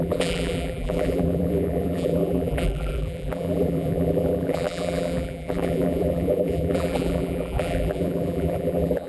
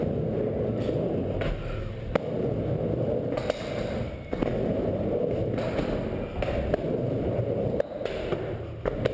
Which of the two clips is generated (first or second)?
first